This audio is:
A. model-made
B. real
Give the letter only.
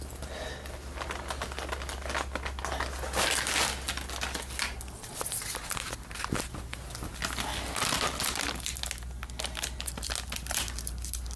B